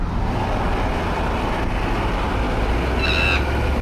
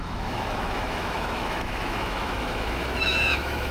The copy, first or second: second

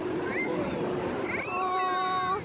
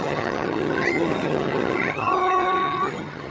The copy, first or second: second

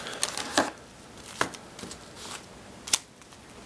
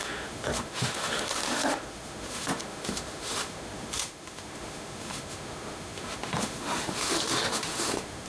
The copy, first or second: second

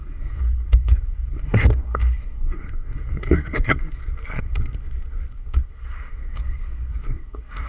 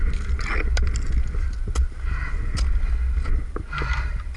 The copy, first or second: first